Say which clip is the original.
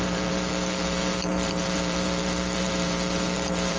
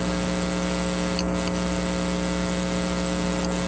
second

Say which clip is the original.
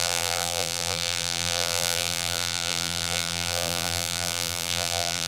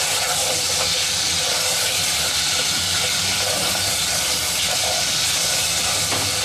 second